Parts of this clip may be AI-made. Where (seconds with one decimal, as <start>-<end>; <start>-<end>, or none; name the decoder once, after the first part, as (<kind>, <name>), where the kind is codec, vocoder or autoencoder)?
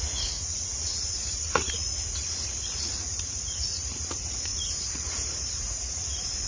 0.0-6.5 (vocoder, Vocos)